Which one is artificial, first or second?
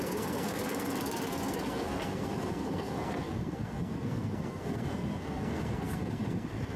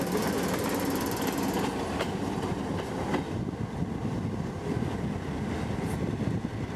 first